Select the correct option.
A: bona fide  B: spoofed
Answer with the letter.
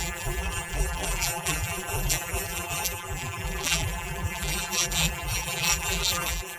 B